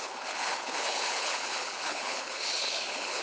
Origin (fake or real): fake